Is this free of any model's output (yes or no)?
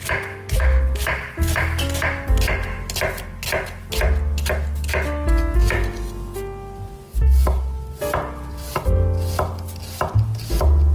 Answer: yes